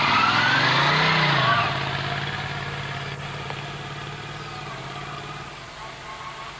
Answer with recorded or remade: recorded